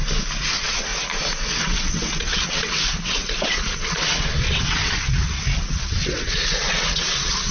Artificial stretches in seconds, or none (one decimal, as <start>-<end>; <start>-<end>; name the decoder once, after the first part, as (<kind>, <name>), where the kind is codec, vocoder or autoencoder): 0.5-0.9 (vocoder, WaveNeXt); 1.6-7.5